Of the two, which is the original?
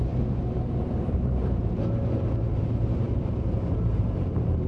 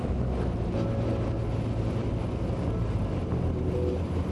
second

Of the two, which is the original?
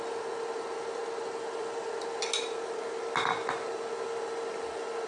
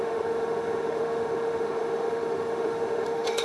first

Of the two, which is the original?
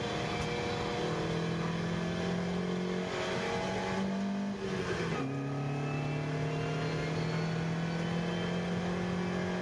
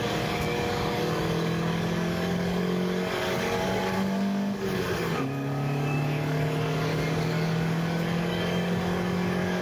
first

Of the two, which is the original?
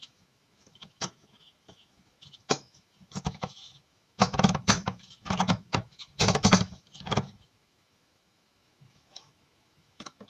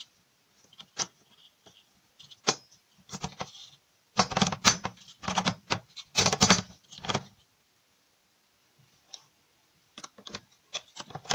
second